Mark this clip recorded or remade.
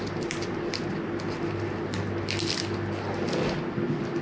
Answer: recorded